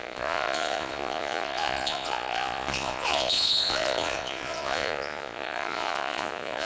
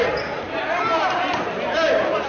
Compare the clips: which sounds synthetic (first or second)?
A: first